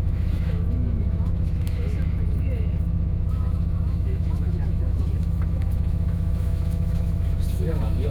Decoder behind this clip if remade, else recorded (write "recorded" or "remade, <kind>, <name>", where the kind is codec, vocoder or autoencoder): remade, autoencoder, DAC-VAE